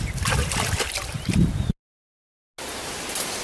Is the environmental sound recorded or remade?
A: recorded